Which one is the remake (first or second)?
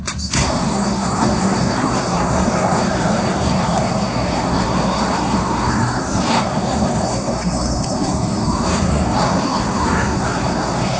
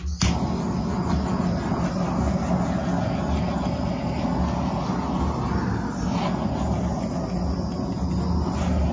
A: first